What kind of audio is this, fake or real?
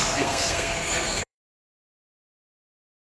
fake